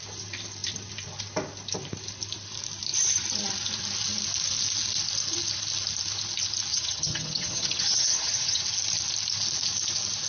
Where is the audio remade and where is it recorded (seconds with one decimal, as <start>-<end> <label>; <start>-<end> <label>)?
0.0-6.7 recorded; 6.7-8.6 remade; 8.6-10.3 recorded

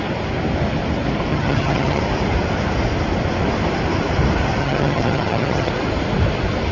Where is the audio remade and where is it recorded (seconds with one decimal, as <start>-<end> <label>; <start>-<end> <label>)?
0.0-1.3 recorded; 1.3-2.0 remade; 2.0-4.6 recorded; 4.6-5.7 remade; 5.7-6.7 recorded